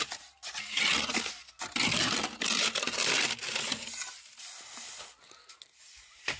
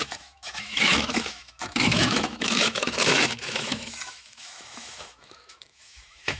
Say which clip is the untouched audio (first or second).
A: first